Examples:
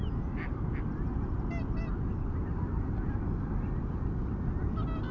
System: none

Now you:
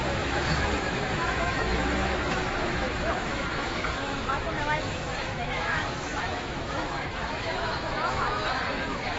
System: autoencoder, DAC-VAE